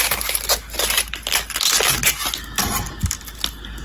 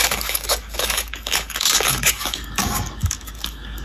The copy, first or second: second